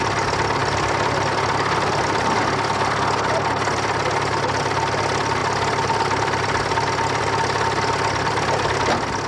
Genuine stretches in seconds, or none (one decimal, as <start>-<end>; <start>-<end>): 0.0-9.3